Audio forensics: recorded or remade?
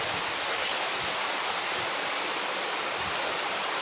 recorded